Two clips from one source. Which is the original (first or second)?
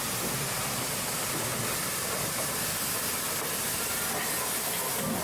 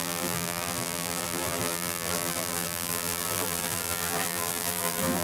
first